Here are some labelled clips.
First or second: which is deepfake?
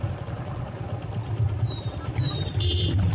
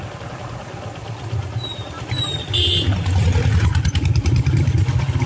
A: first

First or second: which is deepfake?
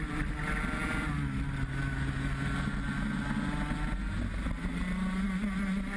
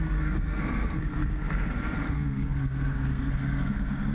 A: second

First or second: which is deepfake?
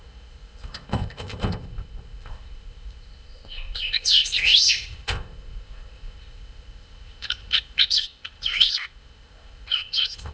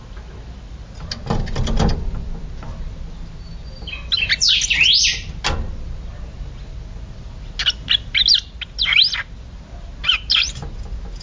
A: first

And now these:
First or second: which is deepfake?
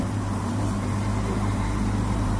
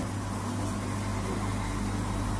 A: first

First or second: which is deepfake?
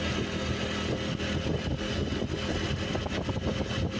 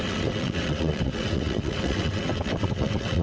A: second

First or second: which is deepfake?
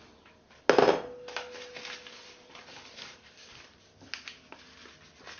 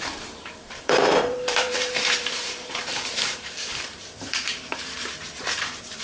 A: second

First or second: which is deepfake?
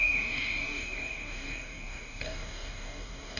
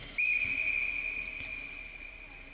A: first